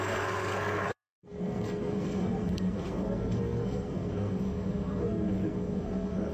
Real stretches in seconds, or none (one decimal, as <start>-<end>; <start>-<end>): none